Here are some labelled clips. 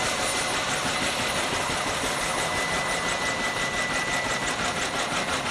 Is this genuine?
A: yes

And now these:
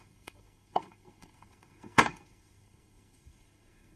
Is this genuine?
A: no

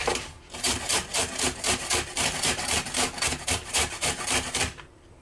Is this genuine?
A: no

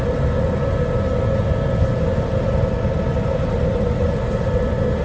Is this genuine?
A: yes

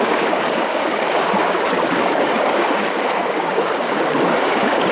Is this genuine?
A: no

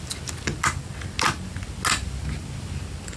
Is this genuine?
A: yes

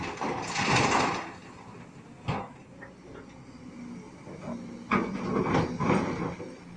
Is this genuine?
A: yes